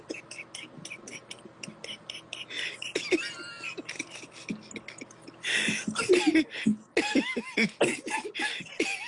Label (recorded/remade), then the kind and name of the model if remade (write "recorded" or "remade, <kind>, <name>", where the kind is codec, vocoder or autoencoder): recorded